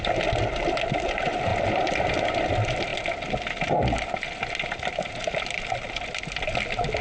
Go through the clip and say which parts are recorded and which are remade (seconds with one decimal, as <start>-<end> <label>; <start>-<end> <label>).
0.0-7.0 recorded